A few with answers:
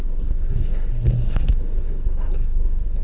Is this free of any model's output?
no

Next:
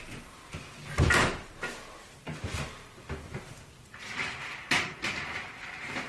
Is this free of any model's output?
yes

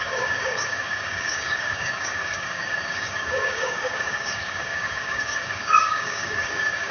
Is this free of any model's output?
no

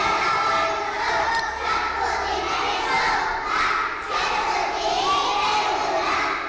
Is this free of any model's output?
yes